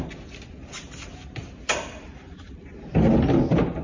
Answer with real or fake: real